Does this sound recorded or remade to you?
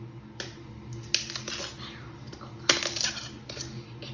recorded